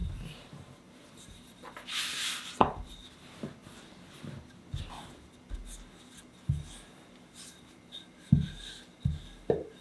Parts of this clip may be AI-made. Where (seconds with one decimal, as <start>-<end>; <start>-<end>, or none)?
0.0-1.5